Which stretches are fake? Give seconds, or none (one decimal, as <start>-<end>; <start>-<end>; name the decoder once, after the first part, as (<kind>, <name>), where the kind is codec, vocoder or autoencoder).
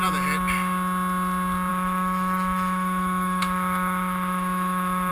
1.7-5.1 (autoencoder, DAC-VAE)